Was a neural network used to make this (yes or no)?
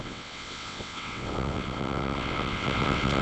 yes